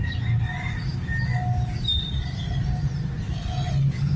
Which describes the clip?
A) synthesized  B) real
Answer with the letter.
B